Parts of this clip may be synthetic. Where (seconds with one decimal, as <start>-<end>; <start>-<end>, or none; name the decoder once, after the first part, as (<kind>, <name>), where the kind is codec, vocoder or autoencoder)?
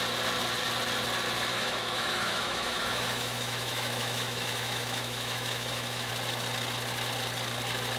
1.5-6.1 (autoencoder, DAC-VAE)